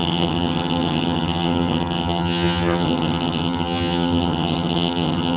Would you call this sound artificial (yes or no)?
yes